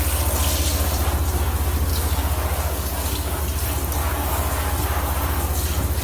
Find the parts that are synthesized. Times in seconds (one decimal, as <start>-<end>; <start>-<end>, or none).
1.9-3.4; 4.0-4.8